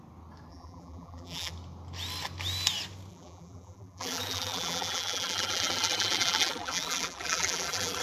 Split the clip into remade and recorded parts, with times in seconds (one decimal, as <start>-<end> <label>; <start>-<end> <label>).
0.0-0.5 recorded; 0.5-1.5 remade; 1.5-3.1 recorded; 3.1-8.0 remade